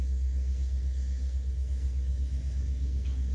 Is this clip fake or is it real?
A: fake